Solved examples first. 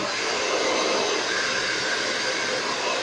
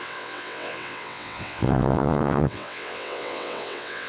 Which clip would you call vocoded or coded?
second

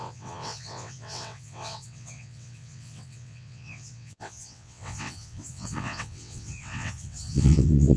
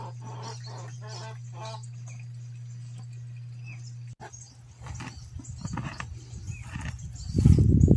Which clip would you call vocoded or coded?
first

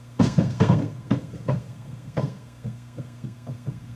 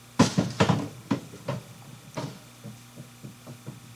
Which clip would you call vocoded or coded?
first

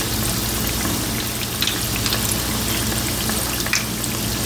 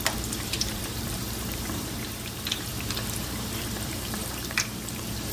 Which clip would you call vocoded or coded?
second